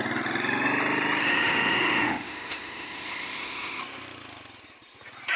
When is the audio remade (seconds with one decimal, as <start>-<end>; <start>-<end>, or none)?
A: 1.2-3.8